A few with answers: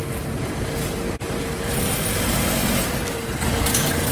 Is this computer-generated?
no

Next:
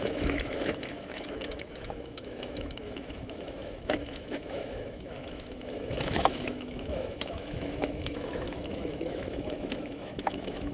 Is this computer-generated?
yes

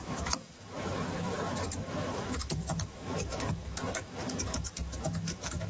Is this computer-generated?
yes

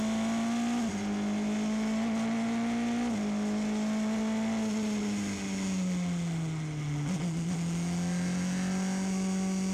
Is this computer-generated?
no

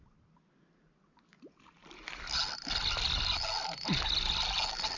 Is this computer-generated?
no